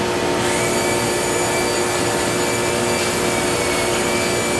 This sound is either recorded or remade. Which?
recorded